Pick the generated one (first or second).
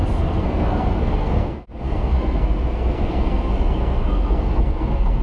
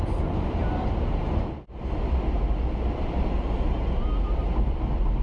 first